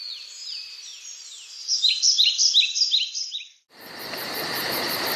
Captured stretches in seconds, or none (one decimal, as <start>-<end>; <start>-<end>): 0.9-4.0